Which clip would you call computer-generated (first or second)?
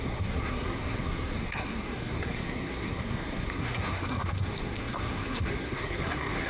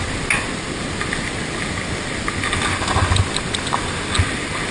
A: first